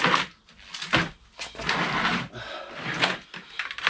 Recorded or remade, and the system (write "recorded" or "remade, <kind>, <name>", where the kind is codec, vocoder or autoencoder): recorded